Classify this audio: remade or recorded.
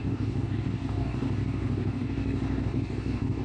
remade